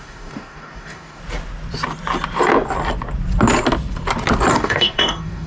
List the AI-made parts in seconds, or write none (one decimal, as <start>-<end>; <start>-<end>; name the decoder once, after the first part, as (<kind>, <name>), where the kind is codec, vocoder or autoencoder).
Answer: 0.0-1.2 (codec, DAC); 4.5-5.5